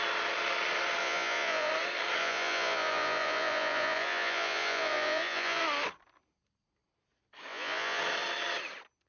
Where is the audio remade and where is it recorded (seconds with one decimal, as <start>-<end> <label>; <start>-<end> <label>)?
0.0-1.0 recorded; 1.0-1.7 remade; 1.7-2.2 recorded; 2.2-5.6 remade; 5.6-7.5 recorded; 7.5-8.0 remade; 8.0-9.1 recorded